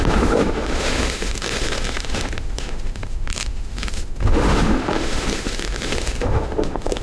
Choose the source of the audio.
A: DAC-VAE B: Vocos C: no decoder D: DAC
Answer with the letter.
A